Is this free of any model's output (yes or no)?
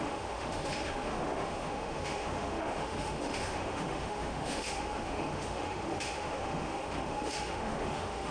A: no